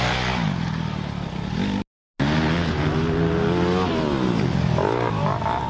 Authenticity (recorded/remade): recorded